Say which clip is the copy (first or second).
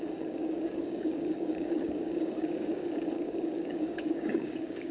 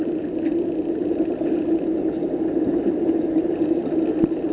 first